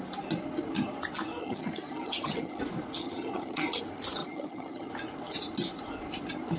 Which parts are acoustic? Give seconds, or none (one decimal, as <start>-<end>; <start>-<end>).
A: 0.0-1.4; 2.6-3.0; 3.8-4.2; 4.9-6.6